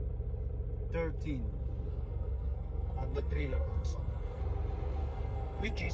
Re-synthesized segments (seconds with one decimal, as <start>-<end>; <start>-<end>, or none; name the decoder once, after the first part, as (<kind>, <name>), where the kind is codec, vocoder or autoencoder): 1.9-4.4 (codec, SNAC); 5.0-5.9